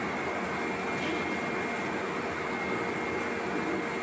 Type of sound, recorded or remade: recorded